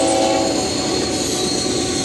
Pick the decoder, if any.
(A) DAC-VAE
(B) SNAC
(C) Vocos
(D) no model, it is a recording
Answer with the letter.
D